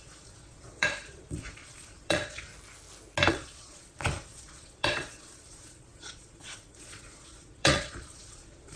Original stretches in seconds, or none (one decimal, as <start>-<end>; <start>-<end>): 2.5-3.3